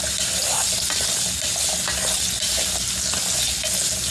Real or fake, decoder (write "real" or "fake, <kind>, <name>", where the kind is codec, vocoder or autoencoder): real